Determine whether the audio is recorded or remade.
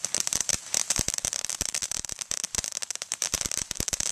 remade